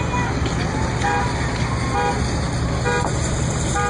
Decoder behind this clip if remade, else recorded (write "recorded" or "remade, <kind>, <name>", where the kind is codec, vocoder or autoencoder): recorded